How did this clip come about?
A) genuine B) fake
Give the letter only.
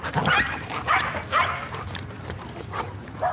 A